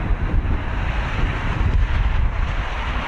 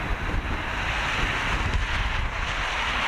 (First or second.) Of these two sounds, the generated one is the first